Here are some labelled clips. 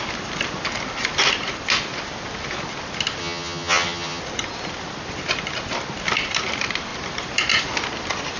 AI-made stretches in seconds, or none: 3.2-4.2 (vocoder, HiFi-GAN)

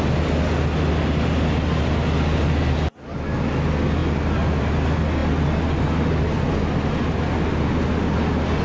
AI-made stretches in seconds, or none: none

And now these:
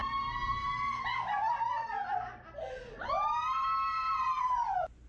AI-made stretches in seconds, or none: none

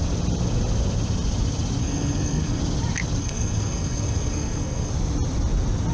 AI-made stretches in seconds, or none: 1.8-2.6 (codec, SNAC); 3.2-4.9

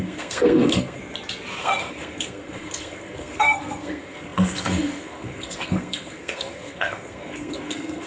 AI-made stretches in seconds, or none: 0.0-1.0 (codec, SNAC); 1.6-8.1

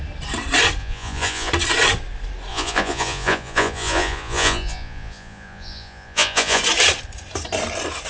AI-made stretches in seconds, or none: 0.8-1.5 (vocoder, Vocos); 2.5-6.6

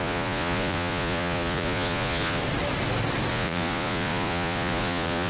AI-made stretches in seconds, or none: 0.0-2.4 (vocoder, Vocos); 3.3-5.3